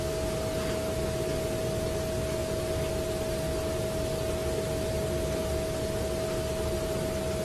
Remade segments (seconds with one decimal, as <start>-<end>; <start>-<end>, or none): none